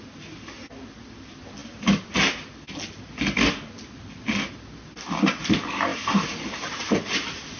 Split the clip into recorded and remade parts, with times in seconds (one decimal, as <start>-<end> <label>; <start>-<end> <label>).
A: 0.0-7.6 recorded